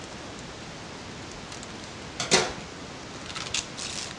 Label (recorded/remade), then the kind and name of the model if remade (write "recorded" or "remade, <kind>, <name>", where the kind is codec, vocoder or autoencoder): recorded